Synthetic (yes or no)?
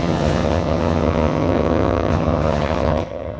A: yes